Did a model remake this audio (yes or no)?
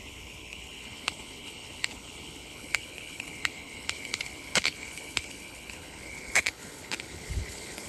yes